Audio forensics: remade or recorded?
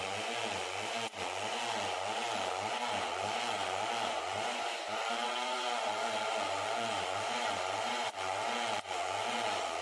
remade